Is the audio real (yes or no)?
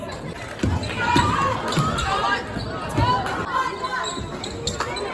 yes